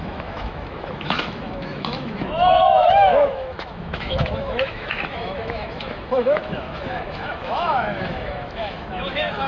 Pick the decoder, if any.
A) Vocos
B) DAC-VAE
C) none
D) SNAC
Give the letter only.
B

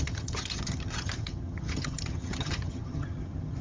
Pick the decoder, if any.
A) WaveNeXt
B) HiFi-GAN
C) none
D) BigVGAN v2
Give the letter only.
B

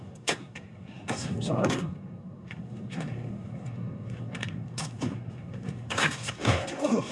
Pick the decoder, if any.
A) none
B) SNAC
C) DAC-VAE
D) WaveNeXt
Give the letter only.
B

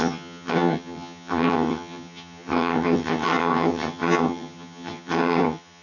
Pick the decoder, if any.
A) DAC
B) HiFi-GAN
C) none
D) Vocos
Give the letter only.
B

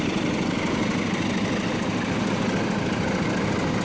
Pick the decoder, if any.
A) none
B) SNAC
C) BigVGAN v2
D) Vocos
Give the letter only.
A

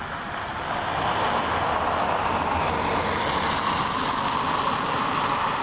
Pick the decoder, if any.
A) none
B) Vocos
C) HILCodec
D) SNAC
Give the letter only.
A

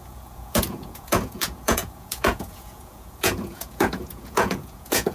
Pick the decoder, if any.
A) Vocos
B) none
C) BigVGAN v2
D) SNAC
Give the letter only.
A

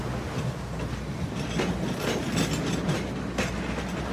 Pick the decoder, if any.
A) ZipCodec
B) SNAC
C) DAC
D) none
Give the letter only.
D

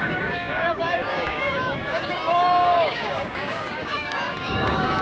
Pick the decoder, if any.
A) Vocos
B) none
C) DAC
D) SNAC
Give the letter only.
C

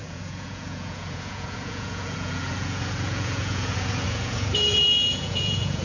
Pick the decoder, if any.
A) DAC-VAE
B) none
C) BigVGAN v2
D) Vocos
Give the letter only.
D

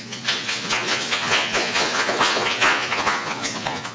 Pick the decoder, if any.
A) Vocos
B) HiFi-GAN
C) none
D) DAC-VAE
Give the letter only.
A